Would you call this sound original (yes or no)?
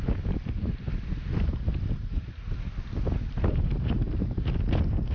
yes